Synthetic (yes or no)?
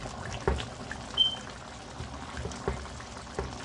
no